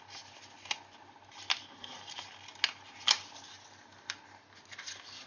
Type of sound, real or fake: real